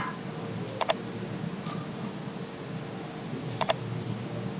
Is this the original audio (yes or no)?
yes